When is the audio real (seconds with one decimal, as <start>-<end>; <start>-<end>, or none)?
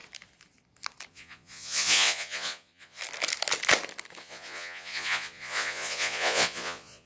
0.0-1.1; 3.0-4.2